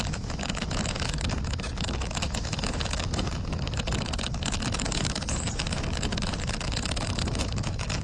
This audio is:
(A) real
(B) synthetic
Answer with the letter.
B